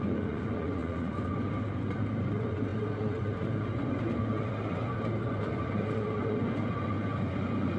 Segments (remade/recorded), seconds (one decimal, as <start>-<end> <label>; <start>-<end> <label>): 0.0-7.8 remade